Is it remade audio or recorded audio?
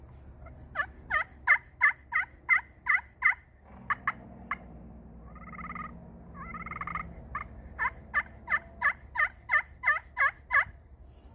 recorded